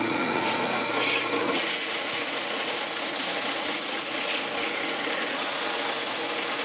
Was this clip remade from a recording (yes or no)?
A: yes